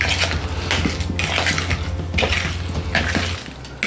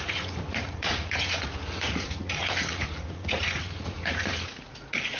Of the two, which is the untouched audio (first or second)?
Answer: first